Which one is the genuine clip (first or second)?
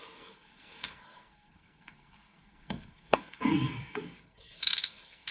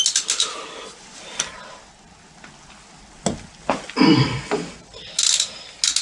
second